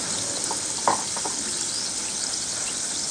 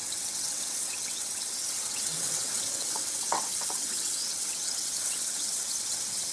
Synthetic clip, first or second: second